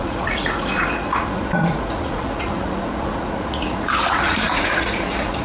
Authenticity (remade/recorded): remade